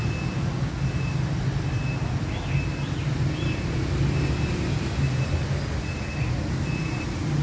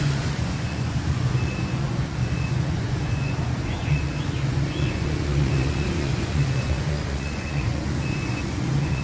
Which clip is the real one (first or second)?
first